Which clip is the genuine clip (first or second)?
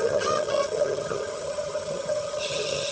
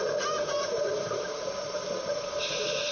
second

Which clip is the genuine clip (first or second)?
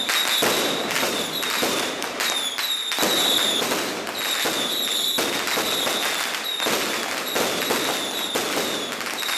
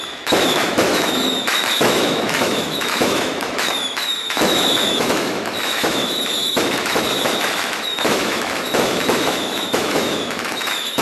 first